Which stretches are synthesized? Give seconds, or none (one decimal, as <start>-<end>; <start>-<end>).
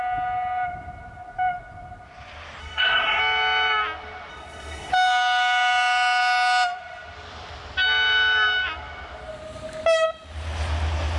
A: 2.6-3.2; 4.3-4.9